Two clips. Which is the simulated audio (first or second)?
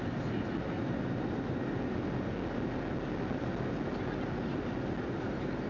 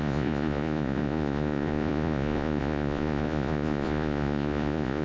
second